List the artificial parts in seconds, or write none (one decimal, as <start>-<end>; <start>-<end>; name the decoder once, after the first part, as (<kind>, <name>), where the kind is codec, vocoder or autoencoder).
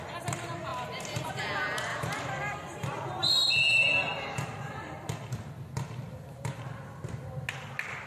0.7-1.3 (vocoder, BigVGAN v2); 1.9-3.3; 4.1-6.6